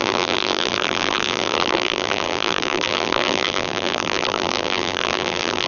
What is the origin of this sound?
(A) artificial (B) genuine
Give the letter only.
A